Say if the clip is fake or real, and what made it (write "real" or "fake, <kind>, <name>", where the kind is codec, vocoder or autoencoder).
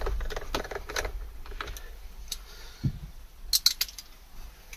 real